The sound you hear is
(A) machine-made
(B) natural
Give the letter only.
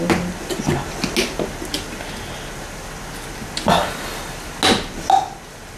B